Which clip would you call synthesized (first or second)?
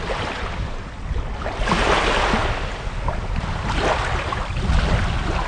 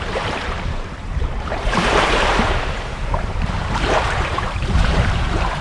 second